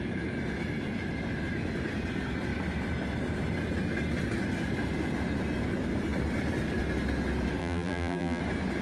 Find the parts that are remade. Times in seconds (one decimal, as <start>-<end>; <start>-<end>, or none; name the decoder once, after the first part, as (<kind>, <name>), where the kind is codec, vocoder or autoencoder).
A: 7.6-8.4 (vocoder, BigVGAN v2)